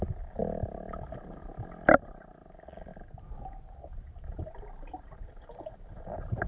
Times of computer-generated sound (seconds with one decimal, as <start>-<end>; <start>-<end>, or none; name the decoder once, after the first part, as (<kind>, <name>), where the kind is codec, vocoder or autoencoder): 2.9-6.5 (vocoder, BigVGAN v2)